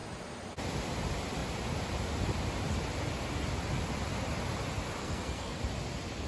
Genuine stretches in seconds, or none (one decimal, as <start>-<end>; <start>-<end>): 0.0-5.0; 5.6-6.3